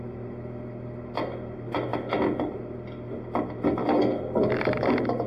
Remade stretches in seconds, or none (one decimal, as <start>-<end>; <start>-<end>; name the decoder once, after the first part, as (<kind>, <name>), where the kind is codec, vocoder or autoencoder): none